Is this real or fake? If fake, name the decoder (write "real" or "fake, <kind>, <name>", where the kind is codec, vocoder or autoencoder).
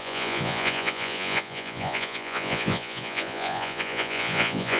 fake, vocoder, Vocos